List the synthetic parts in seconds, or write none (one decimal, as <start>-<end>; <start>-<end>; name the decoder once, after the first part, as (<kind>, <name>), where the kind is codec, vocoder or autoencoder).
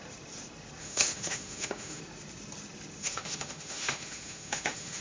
0.8-2.0 (autoencoder, DAC-VAE); 3.0-5.0